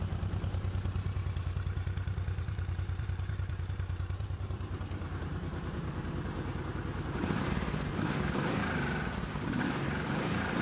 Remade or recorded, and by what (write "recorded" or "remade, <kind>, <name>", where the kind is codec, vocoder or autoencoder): remade, vocoder, BigVGAN v2